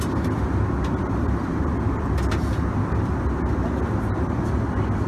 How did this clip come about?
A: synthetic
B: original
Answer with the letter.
B